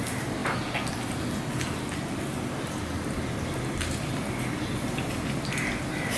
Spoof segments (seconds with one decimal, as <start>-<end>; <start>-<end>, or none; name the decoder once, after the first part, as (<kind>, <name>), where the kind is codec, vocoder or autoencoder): none